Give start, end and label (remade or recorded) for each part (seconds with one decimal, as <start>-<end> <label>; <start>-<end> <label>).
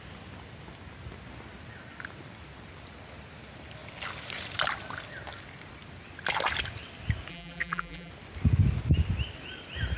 0.0-7.3 recorded; 7.3-8.1 remade; 8.1-10.0 recorded